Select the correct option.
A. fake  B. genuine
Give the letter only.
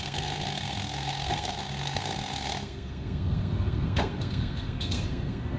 A